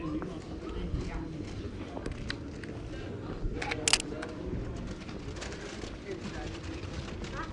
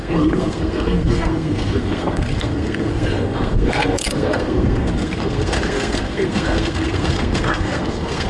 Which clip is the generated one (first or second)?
second